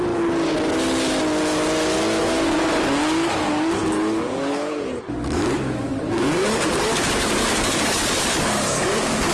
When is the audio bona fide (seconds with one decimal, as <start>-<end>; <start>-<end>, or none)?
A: 0.0-2.2